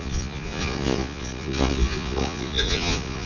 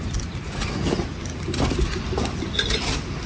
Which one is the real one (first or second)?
second